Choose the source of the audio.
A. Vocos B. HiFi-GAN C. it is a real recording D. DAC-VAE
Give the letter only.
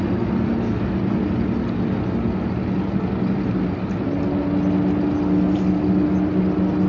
C